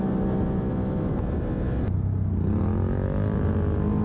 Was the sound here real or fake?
real